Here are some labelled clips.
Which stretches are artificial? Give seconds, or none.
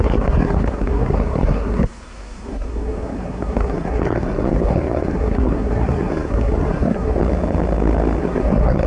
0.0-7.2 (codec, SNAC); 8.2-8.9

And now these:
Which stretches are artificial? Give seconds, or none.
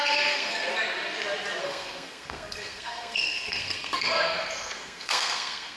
0.0-0.7 (codec, SNAC); 1.6-5.8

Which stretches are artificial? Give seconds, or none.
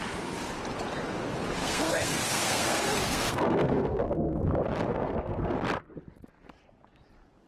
1.6-4.4 (codec, SNAC); 4.9-5.5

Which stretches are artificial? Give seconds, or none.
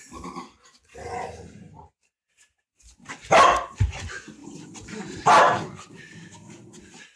none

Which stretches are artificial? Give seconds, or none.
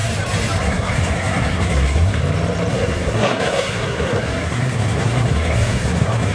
0.6-2.2 (codec, SNAC); 2.7-6.3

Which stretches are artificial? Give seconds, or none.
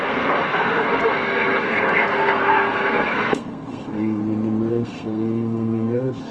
0.0-4.2 (codec, SNAC); 4.7-6.3